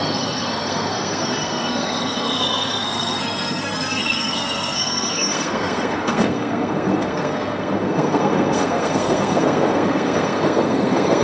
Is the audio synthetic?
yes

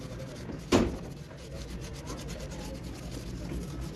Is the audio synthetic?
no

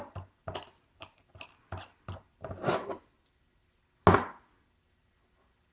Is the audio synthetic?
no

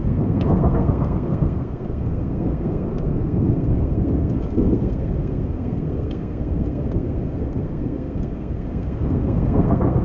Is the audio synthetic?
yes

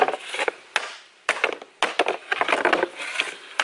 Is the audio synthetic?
no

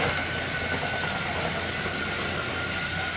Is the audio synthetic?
no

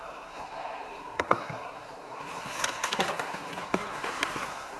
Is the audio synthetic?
yes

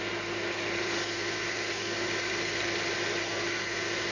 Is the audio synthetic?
no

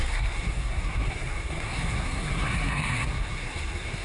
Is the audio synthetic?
yes